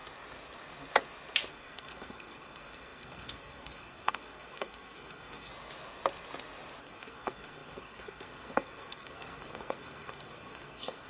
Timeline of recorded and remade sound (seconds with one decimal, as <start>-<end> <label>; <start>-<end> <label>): 0.0-1.5 recorded; 1.5-5.5 remade; 5.5-6.8 recorded; 6.8-11.1 remade